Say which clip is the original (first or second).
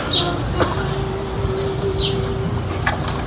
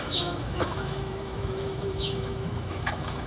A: first